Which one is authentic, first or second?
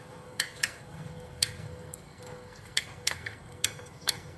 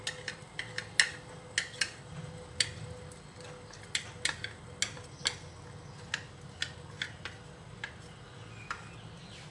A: second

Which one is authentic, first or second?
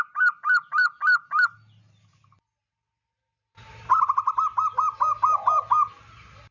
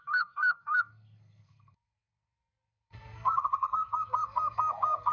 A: first